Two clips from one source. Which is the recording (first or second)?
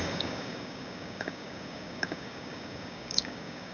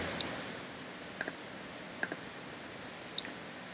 second